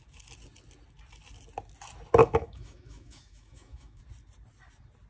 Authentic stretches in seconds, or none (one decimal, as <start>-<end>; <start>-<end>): 0.0-2.2; 4.0-5.1